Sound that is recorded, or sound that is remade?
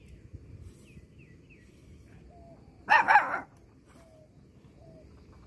recorded